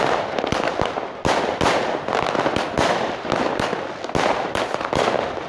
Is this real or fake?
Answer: real